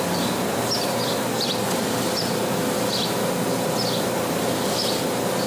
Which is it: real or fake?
real